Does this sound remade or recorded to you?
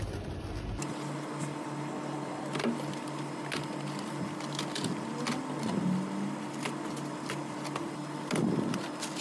recorded